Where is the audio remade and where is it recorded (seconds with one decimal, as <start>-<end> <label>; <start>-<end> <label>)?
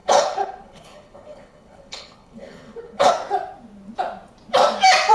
0.0-3.1 remade; 3.1-5.1 recorded